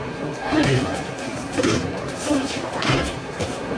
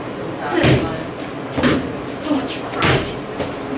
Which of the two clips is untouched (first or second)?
second